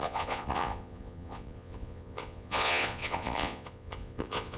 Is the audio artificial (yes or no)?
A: yes